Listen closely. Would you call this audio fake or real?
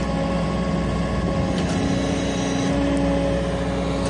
real